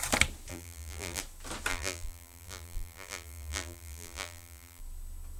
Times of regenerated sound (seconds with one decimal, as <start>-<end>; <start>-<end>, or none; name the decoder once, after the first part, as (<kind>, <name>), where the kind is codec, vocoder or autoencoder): 0.5-1.2 (vocoder, BigVGAN v2); 1.7-4.8